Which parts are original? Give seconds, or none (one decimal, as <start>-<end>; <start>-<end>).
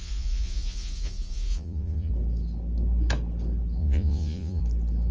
2.1-3.8; 4.6-5.1